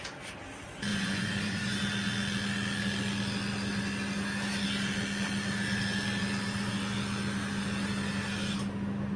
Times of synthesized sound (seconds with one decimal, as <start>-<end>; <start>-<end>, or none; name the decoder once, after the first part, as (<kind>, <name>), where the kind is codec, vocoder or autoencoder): 0.9-1.8 (vocoder, Vocos)